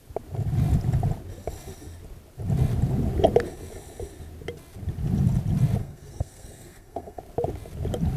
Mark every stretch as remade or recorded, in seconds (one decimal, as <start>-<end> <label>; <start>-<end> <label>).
0.0-5.8 recorded; 5.8-7.2 remade; 7.2-8.2 recorded